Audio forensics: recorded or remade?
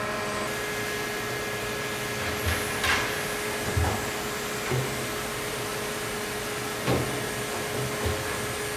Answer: recorded